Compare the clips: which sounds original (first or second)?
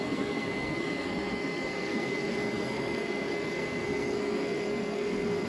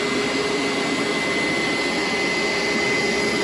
second